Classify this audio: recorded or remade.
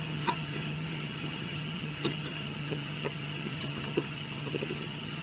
remade